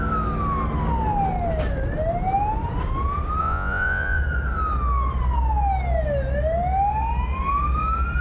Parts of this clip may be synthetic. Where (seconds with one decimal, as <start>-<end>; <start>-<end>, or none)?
3.4-4.2